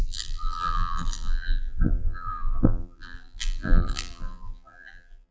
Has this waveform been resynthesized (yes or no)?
yes